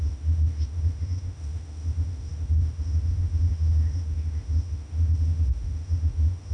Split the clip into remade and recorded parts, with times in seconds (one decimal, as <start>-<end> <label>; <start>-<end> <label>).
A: 0.0-6.5 remade